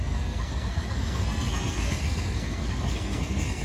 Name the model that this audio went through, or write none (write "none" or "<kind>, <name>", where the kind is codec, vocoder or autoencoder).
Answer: codec, SNAC